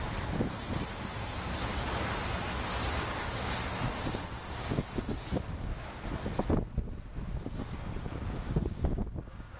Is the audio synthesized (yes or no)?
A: no